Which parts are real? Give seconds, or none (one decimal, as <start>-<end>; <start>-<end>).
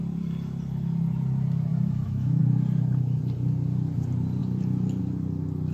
0.0-1.7; 2.4-5.7